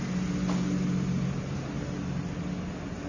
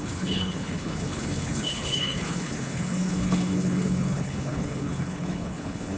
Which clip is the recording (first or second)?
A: first